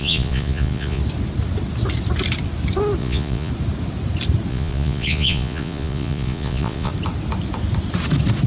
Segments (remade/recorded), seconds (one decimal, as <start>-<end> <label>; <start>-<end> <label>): 0.0-1.0 remade; 1.0-3.0 recorded; 3.0-3.5 remade; 3.5-4.5 recorded; 4.5-6.9 remade; 6.9-8.5 recorded